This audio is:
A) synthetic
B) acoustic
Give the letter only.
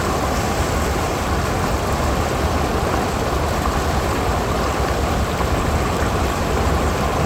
A